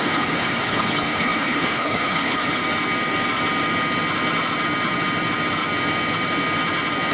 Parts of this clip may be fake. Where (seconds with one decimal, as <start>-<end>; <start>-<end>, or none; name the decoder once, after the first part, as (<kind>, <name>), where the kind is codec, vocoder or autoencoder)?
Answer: 0.0-2.6 (codec, HILCodec)